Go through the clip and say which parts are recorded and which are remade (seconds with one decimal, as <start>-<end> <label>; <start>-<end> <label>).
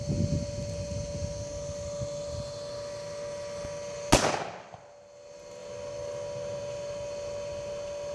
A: 0.0-8.1 recorded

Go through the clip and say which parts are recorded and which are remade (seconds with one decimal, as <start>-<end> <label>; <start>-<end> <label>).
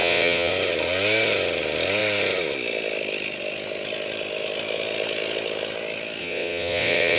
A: 0.0-0.5 remade; 0.5-6.2 recorded; 6.2-7.2 remade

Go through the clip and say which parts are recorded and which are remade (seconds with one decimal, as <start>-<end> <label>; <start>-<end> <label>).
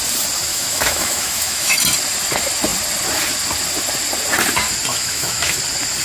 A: 0.0-0.5 recorded; 0.5-1.8 remade; 1.8-4.9 recorded; 4.9-5.6 remade; 5.6-6.0 recorded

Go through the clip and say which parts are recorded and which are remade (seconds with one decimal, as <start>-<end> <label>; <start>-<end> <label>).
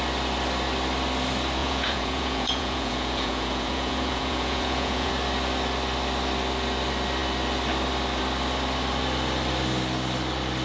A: 0.0-1.6 recorded; 1.6-5.1 remade; 5.1-10.6 recorded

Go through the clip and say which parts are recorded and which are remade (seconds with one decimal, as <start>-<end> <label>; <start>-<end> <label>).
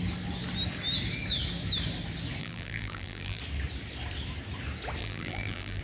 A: 0.0-2.4 recorded; 2.4-3.4 remade; 3.4-5.0 recorded; 5.0-5.8 remade